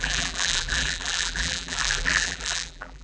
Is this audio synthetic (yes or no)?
yes